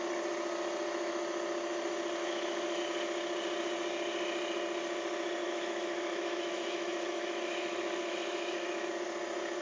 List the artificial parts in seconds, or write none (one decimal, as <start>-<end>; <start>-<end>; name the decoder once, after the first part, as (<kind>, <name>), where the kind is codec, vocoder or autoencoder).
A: 2.2-2.8 (autoencoder, DAC-VAE); 5.4-8.9